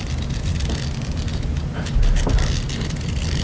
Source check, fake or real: real